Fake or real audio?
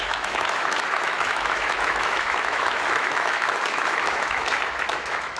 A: fake